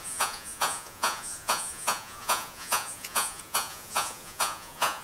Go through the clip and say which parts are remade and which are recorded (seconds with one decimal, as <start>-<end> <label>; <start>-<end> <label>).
0.0-5.0 remade